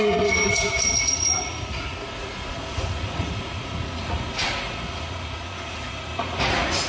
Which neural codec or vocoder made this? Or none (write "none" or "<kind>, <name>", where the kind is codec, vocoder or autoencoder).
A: vocoder, Vocos